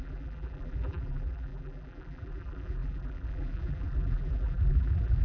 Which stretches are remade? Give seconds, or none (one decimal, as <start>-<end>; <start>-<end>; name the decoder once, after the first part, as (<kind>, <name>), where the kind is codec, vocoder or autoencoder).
0.0-5.2 (vocoder, BigVGAN v2)